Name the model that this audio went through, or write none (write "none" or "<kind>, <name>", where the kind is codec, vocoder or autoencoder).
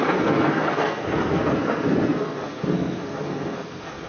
codec, SNAC